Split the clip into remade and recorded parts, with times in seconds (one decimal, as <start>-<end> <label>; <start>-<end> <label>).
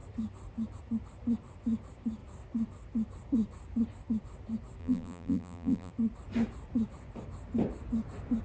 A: 0.0-4.8 recorded; 4.8-5.9 remade; 5.9-8.4 recorded